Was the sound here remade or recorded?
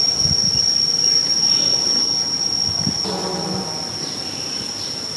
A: recorded